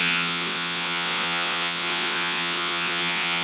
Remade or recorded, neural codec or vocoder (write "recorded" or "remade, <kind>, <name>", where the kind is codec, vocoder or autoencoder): remade, vocoder, WaveNeXt